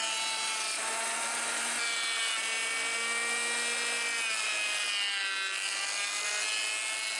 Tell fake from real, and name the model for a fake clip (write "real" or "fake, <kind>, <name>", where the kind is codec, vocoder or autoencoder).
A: real